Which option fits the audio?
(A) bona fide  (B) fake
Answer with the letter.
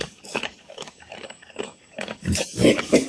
B